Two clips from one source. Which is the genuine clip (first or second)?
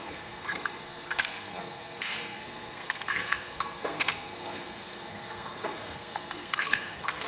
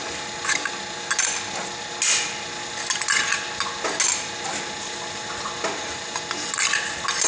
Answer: second